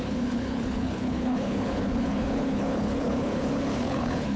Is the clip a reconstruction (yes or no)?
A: yes